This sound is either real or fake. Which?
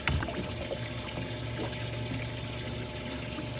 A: real